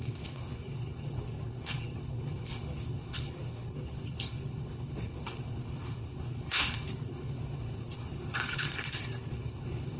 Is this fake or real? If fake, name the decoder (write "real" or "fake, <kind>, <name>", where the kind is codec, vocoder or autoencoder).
fake, codec, HILCodec